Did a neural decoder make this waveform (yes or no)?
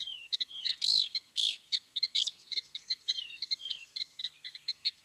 yes